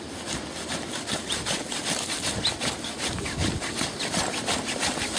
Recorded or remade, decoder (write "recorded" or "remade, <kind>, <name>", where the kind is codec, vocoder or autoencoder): recorded